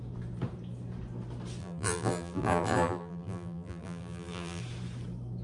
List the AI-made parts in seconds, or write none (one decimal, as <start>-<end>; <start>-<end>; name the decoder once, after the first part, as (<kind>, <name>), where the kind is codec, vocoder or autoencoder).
1.6-4.6 (vocoder, BigVGAN v2)